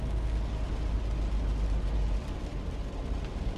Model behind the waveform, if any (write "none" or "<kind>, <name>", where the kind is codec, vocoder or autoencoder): none